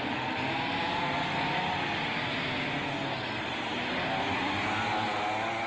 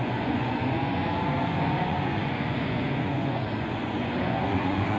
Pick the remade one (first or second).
second